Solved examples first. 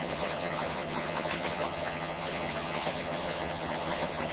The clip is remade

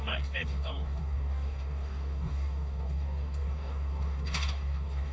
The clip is remade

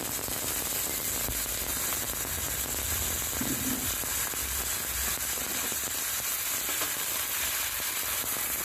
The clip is recorded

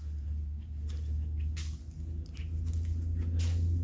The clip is recorded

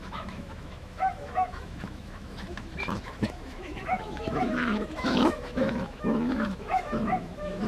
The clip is remade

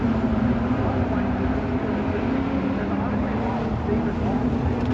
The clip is recorded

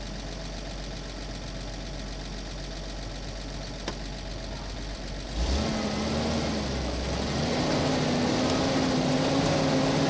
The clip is recorded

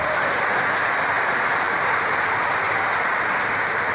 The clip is recorded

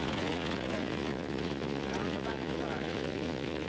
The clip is remade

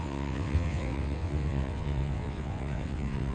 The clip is remade